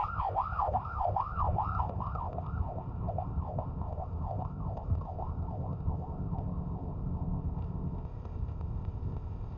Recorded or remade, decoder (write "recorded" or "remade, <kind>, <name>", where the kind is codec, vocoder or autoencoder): remade, codec, ZipCodec